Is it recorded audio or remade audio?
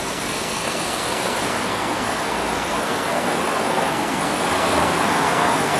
remade